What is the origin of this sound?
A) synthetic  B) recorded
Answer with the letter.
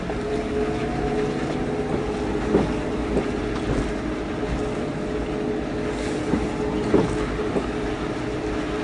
B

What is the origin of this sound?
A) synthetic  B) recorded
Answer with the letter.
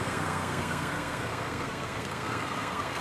A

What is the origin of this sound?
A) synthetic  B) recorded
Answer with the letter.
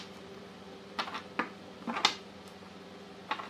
B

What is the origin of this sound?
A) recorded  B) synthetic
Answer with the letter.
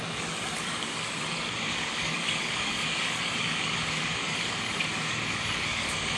B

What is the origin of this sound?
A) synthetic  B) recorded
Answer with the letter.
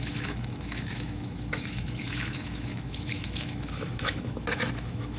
A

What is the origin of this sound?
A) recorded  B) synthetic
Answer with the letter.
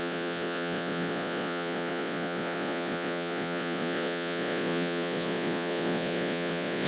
B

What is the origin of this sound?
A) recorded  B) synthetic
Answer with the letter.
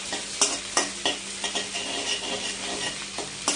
A